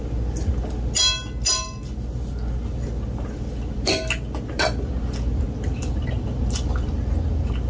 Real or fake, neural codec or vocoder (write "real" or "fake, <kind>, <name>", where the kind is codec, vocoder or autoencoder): real